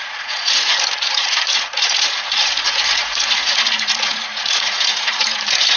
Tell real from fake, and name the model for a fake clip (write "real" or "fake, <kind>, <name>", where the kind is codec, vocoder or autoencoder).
fake, vocoder, Vocos